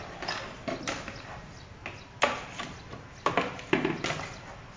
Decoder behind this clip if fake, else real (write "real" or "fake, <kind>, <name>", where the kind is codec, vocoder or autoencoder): real